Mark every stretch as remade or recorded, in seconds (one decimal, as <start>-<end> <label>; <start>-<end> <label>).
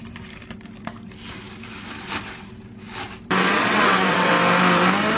0.0-3.4 recorded; 3.4-4.3 remade; 4.3-5.2 recorded